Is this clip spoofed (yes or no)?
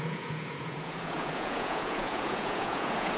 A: yes